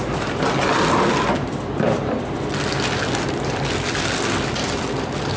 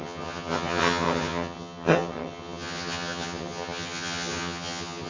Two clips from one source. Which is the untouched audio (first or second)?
first